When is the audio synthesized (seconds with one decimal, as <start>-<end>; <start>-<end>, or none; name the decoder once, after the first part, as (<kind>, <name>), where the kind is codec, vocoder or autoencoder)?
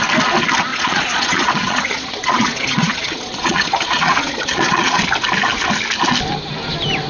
0.7-5.0 (vocoder, Vocos)